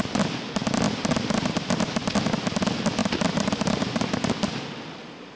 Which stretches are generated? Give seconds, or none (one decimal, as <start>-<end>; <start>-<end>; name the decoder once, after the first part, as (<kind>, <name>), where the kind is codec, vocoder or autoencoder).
0.6-1.2 (vocoder, BigVGAN v2); 3.0-4.2